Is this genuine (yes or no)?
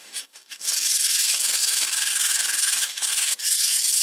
no